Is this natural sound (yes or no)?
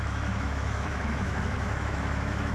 no